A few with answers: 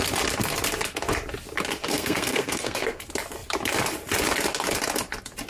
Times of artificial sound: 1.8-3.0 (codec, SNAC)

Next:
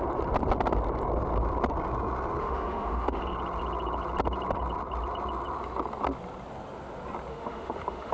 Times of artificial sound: 2.4-3.2 (autoencoder, DAC-VAE); 7.3-8.1

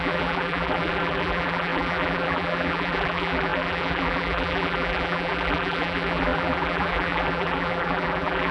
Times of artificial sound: 0.0-8.5 (vocoder, BigVGAN v2)

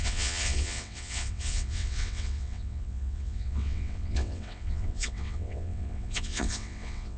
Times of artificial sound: 0.0-7.2 (vocoder, WaveNeXt)

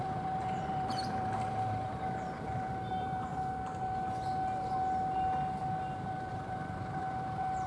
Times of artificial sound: 0.0-3.3 (vocoder, BigVGAN v2); 6.3-7.7

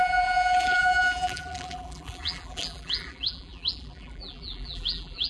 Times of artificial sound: 0.0-5.3 (vocoder, BigVGAN v2)

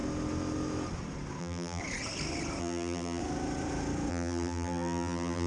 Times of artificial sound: 1.4-1.8 (vocoder, BigVGAN v2); 2.6-3.2; 4.1-5.5

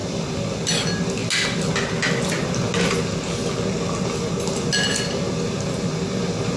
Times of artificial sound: none